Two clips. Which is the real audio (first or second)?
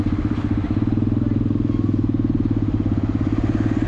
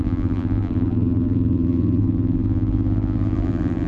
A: first